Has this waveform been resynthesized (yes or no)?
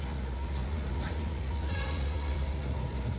yes